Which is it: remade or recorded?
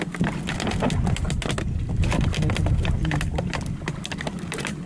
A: recorded